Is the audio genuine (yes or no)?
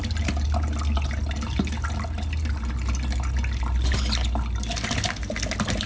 yes